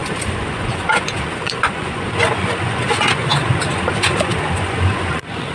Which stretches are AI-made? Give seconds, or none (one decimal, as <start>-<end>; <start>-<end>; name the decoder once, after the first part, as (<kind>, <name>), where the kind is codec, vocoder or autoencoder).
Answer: 0.0-5.5 (vocoder, Vocos)